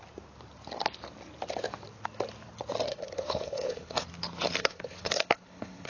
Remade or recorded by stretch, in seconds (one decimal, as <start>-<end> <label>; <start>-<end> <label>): 0.0-2.9 recorded; 2.9-4.0 remade; 4.0-4.6 recorded; 4.6-5.9 remade